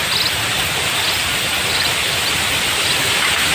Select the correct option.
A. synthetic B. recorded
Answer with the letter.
B